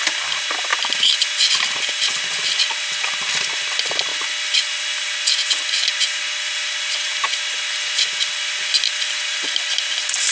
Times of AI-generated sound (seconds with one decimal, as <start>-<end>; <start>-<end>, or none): none